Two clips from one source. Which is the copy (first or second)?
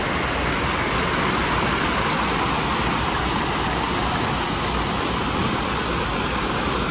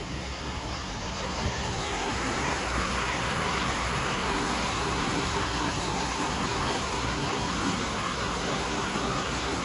second